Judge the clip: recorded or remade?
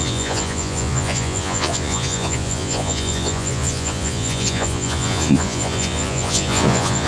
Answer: remade